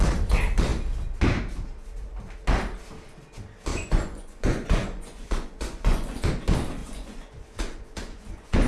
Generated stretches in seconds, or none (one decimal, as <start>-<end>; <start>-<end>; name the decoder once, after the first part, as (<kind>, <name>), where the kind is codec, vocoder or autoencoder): 3.7-6.3 (vocoder, Vocos); 6.8-8.7

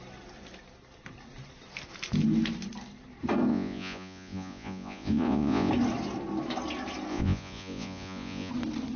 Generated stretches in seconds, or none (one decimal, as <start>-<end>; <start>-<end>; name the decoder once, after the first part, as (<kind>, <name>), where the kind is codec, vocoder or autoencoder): 3.5-5.7 (vocoder, Vocos); 7.1-8.5

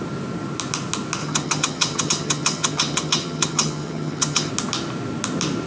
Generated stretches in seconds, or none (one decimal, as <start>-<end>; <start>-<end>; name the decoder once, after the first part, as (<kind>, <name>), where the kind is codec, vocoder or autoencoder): 1.2-4.5 (vocoder, HiFi-GAN)

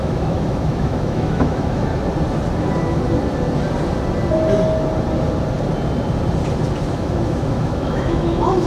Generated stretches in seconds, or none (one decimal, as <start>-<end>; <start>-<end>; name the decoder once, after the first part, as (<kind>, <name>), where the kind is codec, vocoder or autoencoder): 0.0-1.9 (autoencoder, DAC-VAE); 6.9-8.7

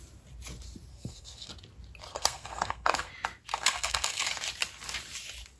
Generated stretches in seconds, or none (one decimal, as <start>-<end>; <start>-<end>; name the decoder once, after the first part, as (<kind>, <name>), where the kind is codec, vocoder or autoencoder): 0.9-1.5 (codec, SNAC); 2.1-3.1; 3.5-4.3

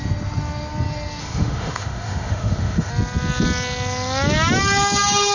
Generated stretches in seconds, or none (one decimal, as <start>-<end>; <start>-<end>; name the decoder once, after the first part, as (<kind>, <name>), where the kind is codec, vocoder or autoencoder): 1.2-2.9 (autoencoder, DAC-VAE)

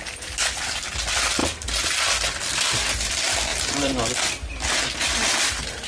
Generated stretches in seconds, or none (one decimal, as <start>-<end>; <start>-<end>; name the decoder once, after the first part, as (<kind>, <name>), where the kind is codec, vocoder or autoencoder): none

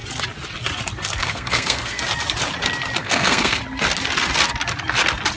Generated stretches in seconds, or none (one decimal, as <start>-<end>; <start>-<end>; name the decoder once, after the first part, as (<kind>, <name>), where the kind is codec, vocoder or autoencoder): 1.2-2.0 (codec, SNAC); 3.0-3.6